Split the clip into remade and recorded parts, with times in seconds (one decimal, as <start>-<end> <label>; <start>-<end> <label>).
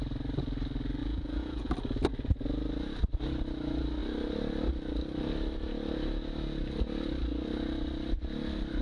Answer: 0.0-1.0 recorded; 1.0-1.7 remade; 1.7-8.8 recorded